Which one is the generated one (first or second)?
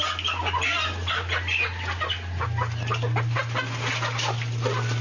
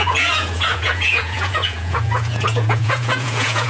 second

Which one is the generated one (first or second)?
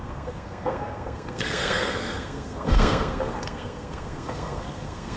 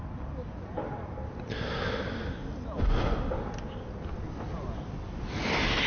first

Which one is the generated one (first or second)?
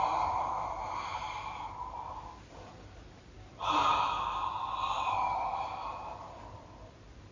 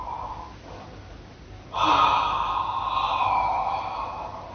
first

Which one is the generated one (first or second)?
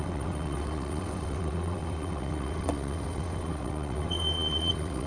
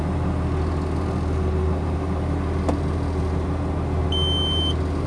first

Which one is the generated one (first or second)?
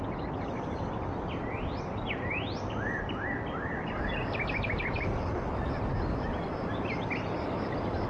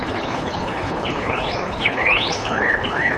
second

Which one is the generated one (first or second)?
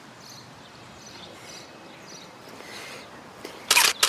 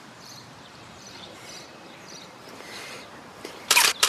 second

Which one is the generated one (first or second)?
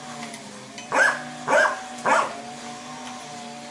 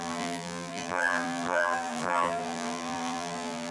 second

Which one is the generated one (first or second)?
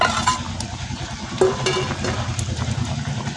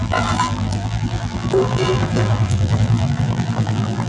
second